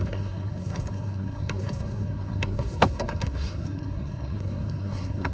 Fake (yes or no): yes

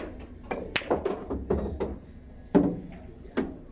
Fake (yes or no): no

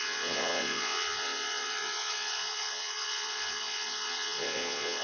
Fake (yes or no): yes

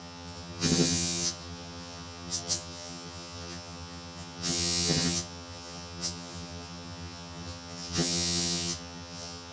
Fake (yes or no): yes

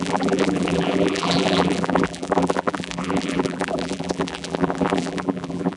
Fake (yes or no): yes